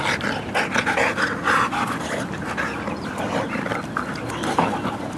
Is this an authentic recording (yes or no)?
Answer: yes